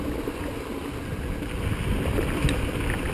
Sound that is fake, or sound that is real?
real